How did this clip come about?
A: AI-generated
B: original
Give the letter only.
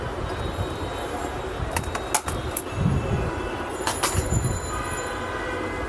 B